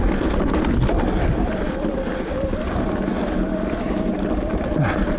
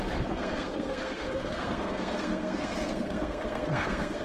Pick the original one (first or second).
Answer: first